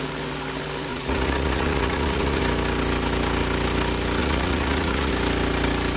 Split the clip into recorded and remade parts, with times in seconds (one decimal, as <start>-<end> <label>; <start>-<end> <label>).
0.0-0.9 recorded; 0.9-2.4 remade; 2.4-4.2 recorded; 4.2-5.1 remade; 5.1-6.0 recorded